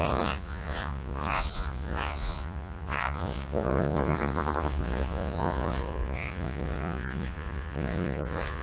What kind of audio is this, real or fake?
fake